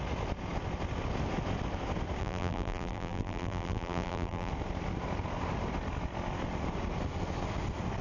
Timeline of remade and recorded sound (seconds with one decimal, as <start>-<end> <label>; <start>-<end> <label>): 0.0-2.2 recorded; 2.2-4.5 remade; 4.5-8.0 recorded